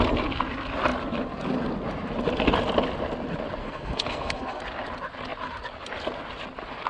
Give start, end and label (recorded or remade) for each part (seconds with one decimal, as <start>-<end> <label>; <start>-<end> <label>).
0.0-3.6 recorded; 3.6-4.6 remade; 4.6-6.9 recorded